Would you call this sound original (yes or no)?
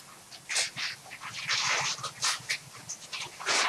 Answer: yes